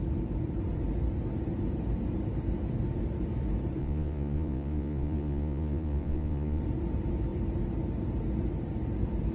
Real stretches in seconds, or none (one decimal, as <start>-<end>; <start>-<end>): 0.0-3.8; 6.6-9.3